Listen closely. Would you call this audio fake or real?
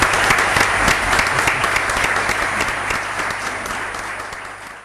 real